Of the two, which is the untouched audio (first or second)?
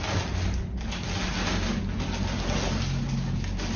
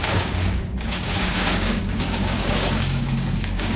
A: first